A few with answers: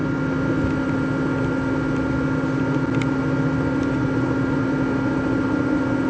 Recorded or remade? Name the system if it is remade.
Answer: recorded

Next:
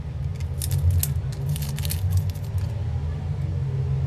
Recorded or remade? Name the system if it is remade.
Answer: recorded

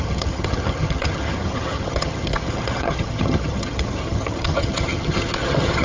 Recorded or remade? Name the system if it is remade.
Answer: remade, vocoder, HiFi-GAN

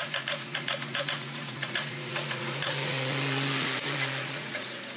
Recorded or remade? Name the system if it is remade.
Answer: remade, vocoder, Vocos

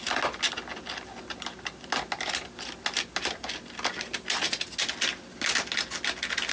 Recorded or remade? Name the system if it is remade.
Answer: recorded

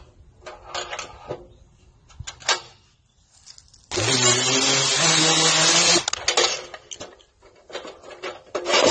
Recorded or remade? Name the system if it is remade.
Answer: recorded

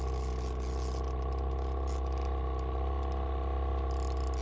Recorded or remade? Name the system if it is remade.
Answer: recorded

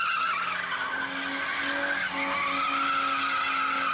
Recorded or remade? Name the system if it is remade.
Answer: recorded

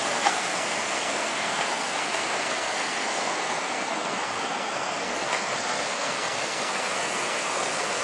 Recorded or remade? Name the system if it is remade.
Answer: remade, codec, SNAC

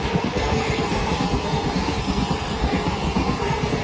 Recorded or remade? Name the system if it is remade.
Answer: remade, codec, SNAC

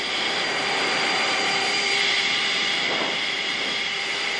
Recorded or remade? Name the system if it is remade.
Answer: remade, vocoder, BigVGAN v2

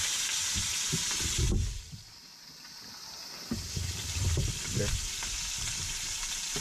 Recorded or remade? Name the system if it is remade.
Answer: remade, vocoder, BigVGAN v2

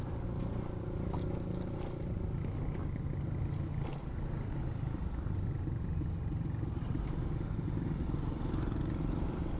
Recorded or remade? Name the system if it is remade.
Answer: recorded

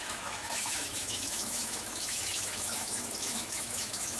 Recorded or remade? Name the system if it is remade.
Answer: remade, autoencoder, DAC-VAE